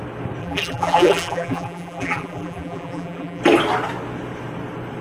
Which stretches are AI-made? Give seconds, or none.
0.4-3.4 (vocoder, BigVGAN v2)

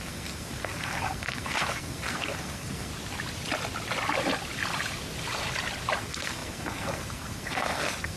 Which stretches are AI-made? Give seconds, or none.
0.0-2.9 (codec, SNAC); 6.0-8.2

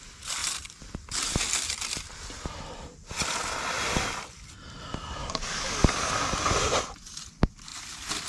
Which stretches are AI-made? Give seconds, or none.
5.2-6.1 (codec, DAC)

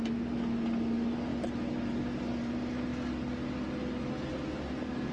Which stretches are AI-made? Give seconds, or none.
none

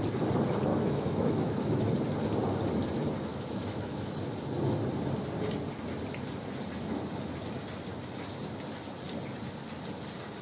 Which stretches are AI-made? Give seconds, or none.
0.7-1.9 (autoencoder, DAC-VAE); 3.3-4.1

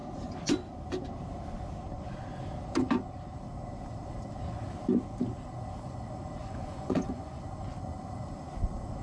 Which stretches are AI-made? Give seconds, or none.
6.4-7.4 (vocoder, Vocos)